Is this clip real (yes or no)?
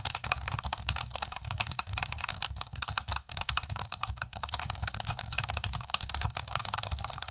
no